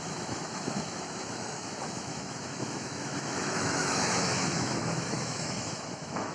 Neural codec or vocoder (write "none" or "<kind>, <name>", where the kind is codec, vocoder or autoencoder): autoencoder, DAC-VAE